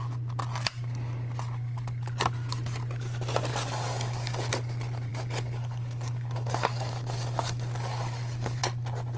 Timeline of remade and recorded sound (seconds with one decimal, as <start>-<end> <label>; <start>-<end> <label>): 0.0-3.5 recorded; 3.5-4.5 remade; 4.5-5.1 recorded; 5.1-8.6 remade; 8.6-9.2 recorded